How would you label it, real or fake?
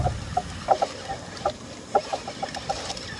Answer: real